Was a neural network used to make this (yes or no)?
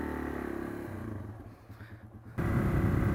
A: no